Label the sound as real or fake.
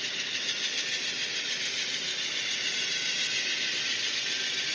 real